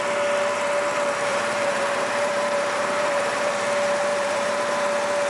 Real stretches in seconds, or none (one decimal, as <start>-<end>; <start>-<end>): 0.0-1.3; 3.5-4.1; 4.6-5.3